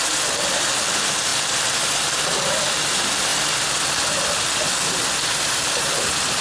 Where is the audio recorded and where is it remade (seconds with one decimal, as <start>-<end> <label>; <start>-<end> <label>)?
0.0-6.4 remade